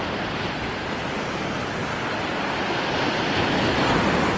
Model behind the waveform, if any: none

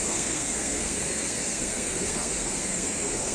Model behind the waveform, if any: codec, SNAC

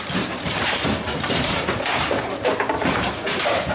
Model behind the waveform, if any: vocoder, BigVGAN v2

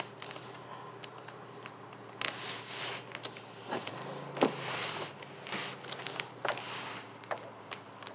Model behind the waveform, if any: none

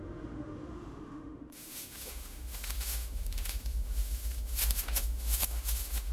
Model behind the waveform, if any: autoencoder, DAC-VAE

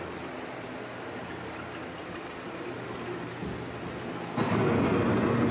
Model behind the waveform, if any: none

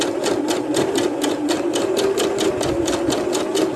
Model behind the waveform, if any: none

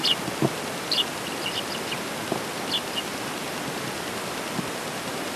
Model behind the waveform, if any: none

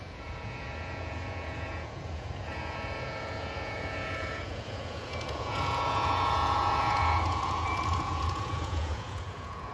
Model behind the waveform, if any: vocoder, Vocos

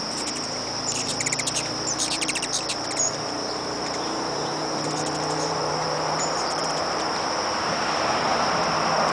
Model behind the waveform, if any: vocoder, BigVGAN v2